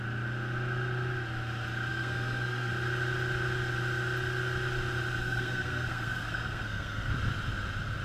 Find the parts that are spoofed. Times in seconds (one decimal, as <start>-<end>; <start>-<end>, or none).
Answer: 1.9-2.7; 5.2-7.1